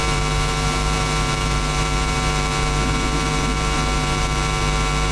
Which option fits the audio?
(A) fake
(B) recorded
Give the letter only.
A